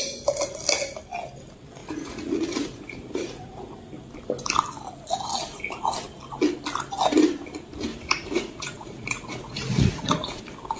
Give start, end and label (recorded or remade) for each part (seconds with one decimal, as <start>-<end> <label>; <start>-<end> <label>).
0.0-1.8 recorded; 1.8-3.8 remade; 3.8-7.9 recorded; 7.9-10.4 remade; 10.4-10.8 recorded